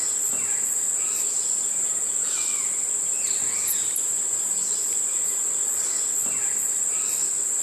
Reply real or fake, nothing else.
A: real